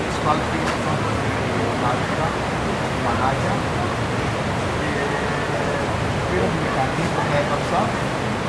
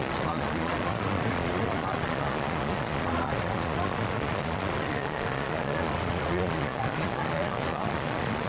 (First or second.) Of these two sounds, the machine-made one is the second